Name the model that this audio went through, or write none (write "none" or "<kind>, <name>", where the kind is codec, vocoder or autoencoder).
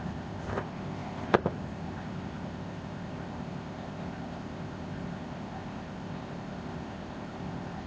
codec, ZipCodec